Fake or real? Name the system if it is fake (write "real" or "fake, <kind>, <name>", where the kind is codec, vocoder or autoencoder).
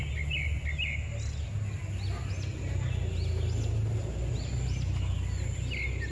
real